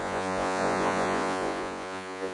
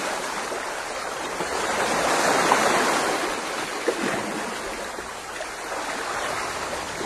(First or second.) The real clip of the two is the second